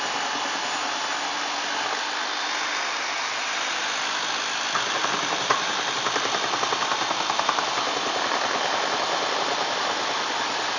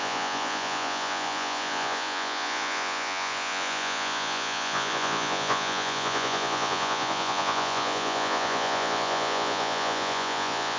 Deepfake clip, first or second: second